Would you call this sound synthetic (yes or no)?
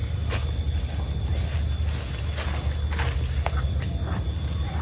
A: no